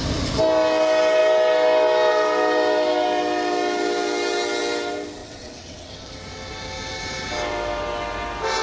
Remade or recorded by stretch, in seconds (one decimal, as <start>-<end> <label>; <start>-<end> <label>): 0.0-5.2 recorded; 5.2-6.1 remade; 6.1-8.6 recorded